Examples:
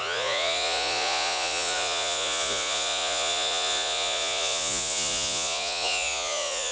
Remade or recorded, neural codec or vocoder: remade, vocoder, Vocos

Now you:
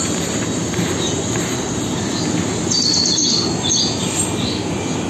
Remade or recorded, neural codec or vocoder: recorded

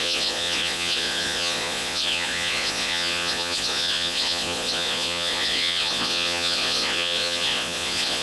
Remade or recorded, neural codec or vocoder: remade, vocoder, Vocos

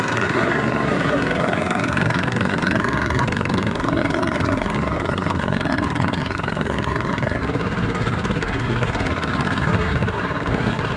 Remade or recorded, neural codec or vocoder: remade, codec, SNAC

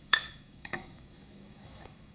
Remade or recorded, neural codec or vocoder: remade, autoencoder, DAC-VAE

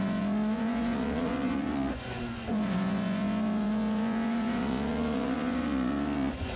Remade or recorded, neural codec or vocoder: remade, vocoder, Vocos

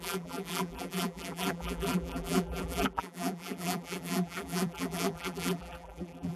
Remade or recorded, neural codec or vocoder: remade, vocoder, BigVGAN v2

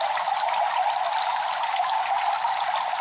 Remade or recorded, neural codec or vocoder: recorded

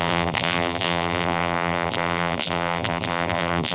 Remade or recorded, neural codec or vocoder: remade, vocoder, BigVGAN v2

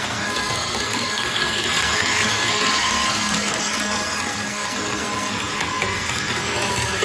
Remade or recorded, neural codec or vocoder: remade, codec, SNAC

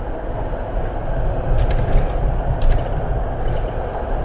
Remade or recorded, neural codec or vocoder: recorded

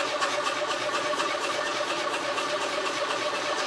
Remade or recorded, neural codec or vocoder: remade, vocoder, Vocos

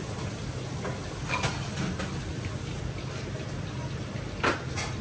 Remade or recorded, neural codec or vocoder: recorded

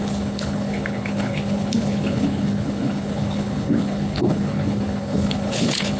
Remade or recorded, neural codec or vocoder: remade, codec, HILCodec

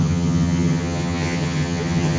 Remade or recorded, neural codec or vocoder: remade, vocoder, HiFi-GAN